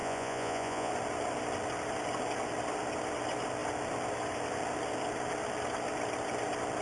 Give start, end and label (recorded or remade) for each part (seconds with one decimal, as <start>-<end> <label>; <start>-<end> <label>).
0.0-0.9 remade; 0.9-6.8 recorded